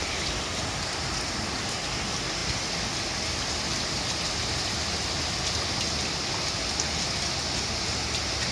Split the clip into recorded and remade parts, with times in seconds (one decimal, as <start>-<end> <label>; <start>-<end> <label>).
0.0-8.5 recorded